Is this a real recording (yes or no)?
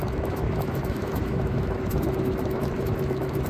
no